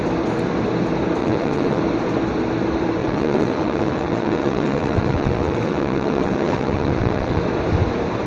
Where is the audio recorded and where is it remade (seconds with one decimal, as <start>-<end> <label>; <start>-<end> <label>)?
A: 0.0-1.2 recorded; 1.2-1.8 remade; 1.8-3.0 recorded; 3.0-7.4 remade; 7.4-8.3 recorded